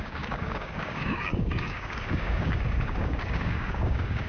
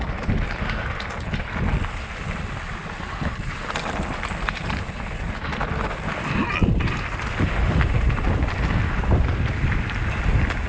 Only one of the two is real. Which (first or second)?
second